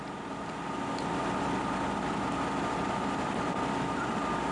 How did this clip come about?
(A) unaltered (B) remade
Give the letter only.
A